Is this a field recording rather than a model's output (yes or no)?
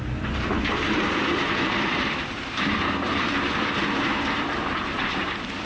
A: no